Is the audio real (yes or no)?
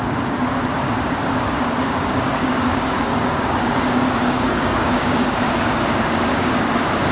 no